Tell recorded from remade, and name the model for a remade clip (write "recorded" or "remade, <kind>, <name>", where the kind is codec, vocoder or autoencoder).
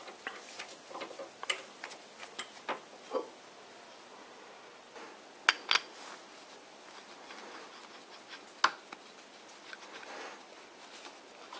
recorded